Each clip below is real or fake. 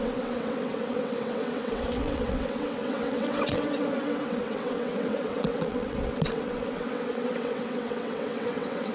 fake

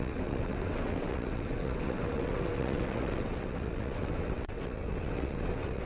fake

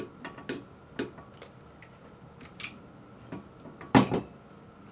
real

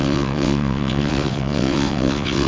fake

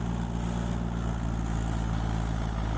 real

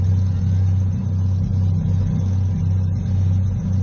real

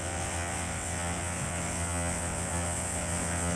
fake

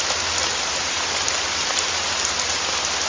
real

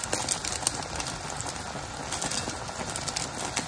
real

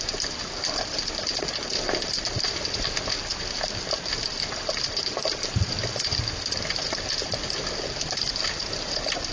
real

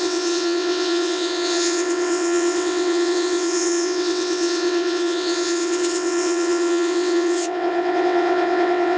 fake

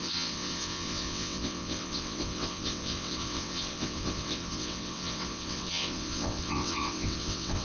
fake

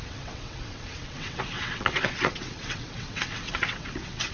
fake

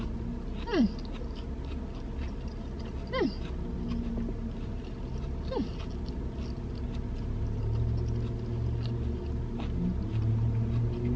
real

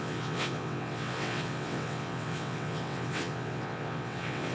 fake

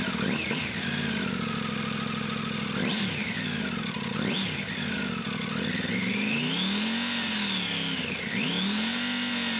real